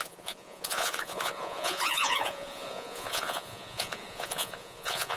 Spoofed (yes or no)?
yes